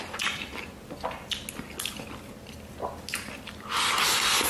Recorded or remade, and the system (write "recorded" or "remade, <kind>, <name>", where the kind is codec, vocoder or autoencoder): recorded